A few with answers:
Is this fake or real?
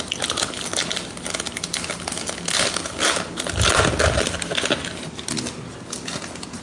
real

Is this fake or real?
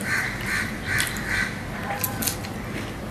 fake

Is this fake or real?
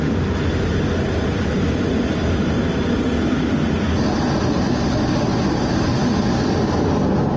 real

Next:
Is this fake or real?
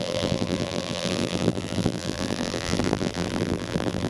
fake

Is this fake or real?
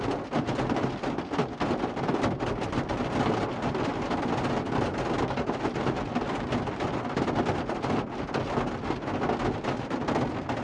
real